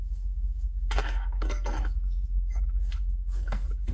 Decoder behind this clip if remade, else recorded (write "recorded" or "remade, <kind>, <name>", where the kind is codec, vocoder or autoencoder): remade, codec, SNAC